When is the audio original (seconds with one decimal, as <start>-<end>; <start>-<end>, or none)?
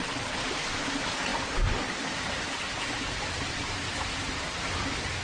0.0-5.2